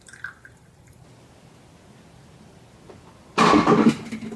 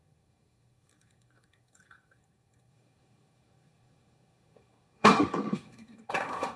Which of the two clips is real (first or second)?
first